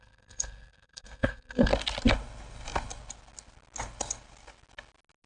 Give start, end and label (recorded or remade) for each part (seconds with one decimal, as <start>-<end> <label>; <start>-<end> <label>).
0.0-1.7 remade; 1.7-5.3 recorded